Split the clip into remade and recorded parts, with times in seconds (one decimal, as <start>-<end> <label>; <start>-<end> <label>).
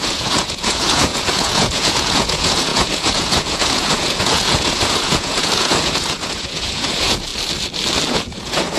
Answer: 0.0-7.3 remade; 7.3-8.1 recorded; 8.1-8.8 remade